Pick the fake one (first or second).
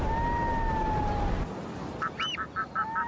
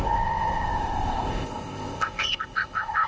second